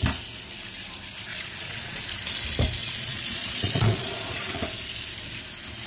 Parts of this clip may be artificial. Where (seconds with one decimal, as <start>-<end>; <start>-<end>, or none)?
1.3-2.0; 2.8-4.6